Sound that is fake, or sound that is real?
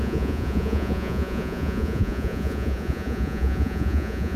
fake